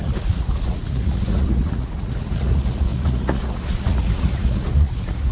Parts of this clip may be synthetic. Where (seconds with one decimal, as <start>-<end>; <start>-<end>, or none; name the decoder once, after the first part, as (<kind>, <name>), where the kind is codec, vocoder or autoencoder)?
0.0-5.3 (vocoder, Vocos)